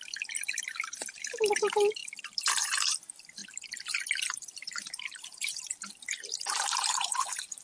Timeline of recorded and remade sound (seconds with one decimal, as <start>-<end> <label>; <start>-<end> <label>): 0.0-1.1 recorded; 1.1-3.4 remade; 3.4-4.2 recorded; 4.2-7.6 remade